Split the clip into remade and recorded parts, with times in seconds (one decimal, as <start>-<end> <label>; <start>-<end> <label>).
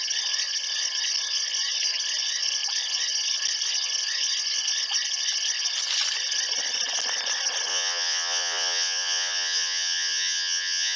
0.0-7.7 recorded; 7.7-11.0 remade